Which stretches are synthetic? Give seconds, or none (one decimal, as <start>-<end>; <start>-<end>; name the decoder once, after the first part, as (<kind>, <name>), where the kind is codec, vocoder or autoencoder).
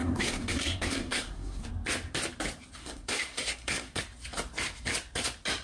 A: 0.0-1.7 (codec, SNAC); 2.8-4.0